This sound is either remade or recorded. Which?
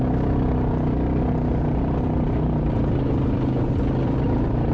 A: recorded